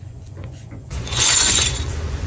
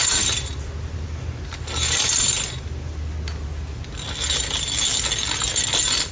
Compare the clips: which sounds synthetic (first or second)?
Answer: first